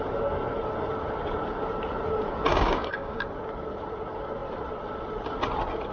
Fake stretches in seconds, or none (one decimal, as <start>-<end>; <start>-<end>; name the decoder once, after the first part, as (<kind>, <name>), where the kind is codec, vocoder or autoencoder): 2.5-3.2 (codec, DAC)